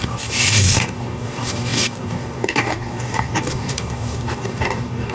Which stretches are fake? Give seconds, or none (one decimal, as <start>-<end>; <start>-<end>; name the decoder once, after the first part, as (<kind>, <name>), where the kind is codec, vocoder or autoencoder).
0.0-5.1 (codec, DAC)